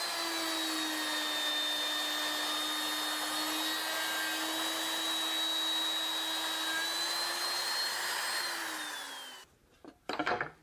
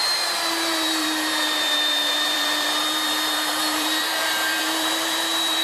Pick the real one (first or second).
first